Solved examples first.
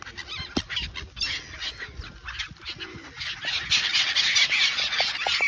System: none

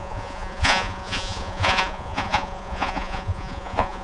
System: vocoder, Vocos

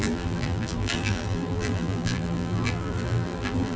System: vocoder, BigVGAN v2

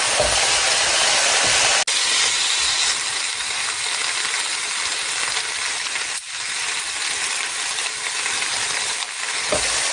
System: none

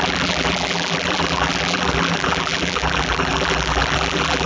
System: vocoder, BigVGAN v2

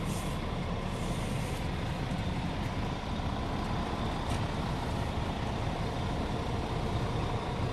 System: vocoder, BigVGAN v2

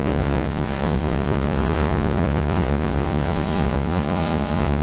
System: vocoder, Vocos